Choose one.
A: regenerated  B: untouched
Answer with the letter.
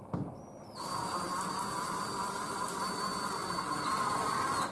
B